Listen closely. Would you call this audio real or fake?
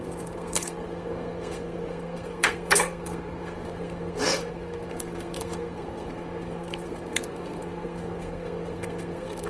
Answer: fake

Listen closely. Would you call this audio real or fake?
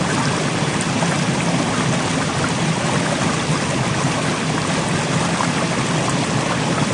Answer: real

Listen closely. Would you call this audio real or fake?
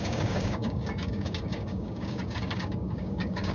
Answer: fake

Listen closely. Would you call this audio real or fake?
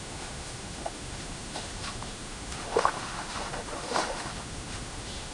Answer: fake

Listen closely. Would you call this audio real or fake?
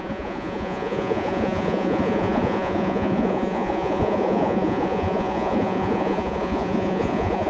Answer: fake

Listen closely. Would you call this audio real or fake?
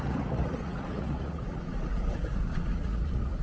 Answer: fake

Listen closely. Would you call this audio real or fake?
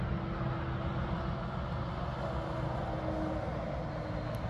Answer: real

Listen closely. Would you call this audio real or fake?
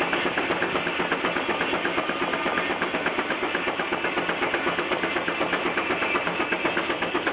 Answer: real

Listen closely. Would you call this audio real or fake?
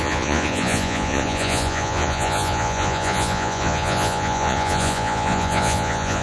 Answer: fake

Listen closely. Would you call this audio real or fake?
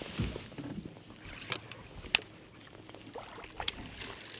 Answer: real